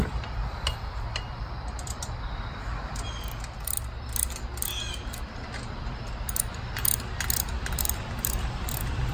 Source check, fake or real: fake